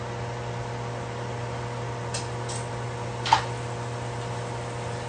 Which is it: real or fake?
real